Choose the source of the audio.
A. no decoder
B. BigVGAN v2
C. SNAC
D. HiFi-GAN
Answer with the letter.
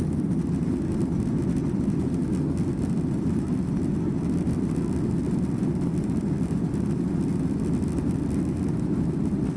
A